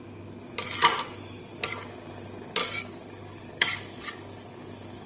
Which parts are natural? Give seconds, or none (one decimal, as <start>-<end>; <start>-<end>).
0.0-2.6